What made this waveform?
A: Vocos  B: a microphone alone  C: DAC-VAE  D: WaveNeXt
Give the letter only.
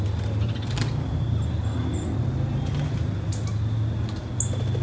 B